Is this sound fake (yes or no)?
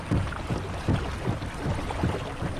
no